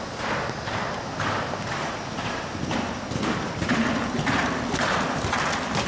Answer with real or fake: real